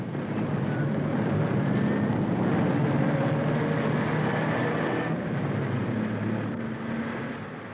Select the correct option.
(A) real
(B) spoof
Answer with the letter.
A